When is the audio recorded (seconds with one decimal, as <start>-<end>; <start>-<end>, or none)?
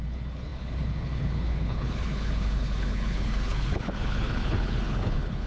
none